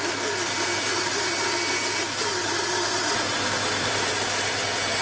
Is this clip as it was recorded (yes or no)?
yes